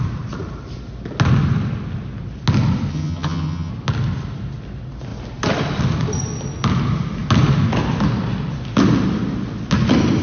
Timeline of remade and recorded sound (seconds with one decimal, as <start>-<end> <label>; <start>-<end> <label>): 0.0-2.9 recorded; 2.9-3.7 remade; 3.7-10.2 recorded